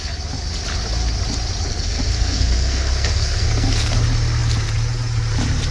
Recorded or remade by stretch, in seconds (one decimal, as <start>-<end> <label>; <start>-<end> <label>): 0.0-1.7 recorded; 1.7-4.0 remade; 4.0-5.7 recorded